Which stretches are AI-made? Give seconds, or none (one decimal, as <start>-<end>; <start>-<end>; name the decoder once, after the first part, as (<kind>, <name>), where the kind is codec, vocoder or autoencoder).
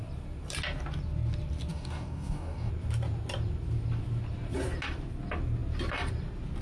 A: 1.7-2.7 (codec, DAC)